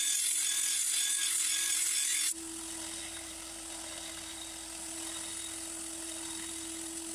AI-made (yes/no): no